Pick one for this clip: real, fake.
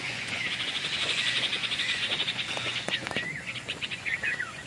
fake